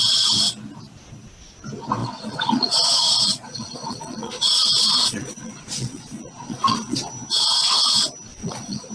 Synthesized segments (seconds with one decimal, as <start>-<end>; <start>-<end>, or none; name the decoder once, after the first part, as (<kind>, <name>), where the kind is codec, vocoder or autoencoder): 2.0-7.1 (vocoder, Vocos); 8.3-8.9